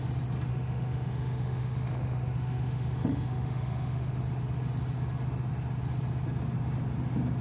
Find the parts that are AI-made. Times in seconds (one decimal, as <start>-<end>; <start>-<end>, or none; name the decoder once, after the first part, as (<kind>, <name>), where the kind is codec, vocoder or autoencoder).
0.5-4.2 (autoencoder, DAC-VAE)